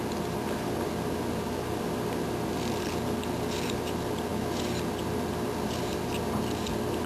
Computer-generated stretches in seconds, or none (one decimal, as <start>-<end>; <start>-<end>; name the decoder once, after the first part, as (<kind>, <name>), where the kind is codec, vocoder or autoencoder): none